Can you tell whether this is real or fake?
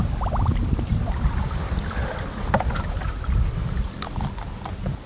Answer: real